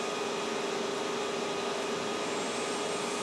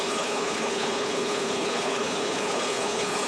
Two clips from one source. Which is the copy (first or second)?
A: second